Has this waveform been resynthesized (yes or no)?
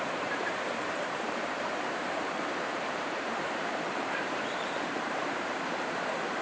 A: yes